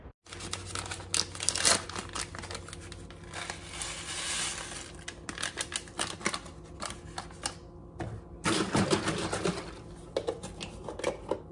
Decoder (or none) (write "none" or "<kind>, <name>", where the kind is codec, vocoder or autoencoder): none